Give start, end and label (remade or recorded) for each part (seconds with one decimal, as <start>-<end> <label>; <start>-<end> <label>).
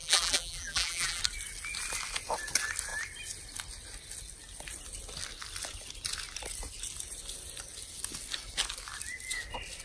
0.0-1.2 remade; 1.2-9.8 recorded